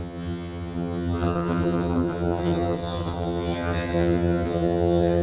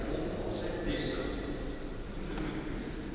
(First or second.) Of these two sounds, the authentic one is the second